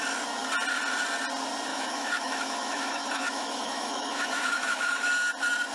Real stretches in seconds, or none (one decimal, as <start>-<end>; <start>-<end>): 0.0-1.7; 5.1-5.7

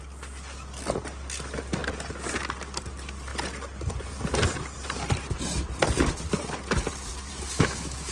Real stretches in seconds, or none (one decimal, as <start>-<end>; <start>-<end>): 0.0-7.3

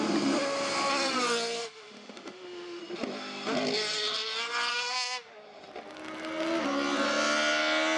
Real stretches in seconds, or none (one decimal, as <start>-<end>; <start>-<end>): 0.0-1.6; 2.8-4.7; 5.3-8.0

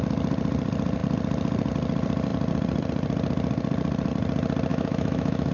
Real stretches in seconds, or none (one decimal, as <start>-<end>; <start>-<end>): 0.0-4.7

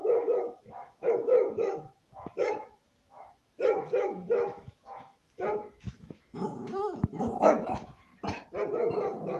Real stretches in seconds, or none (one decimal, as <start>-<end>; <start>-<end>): 8.1-8.7

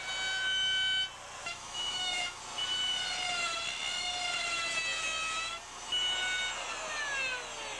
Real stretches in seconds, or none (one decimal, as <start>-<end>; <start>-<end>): 0.0-1.4; 2.4-7.8